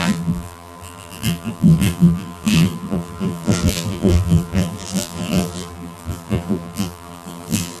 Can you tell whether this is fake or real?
fake